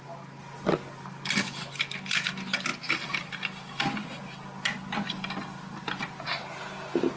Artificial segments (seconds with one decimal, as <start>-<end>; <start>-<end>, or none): none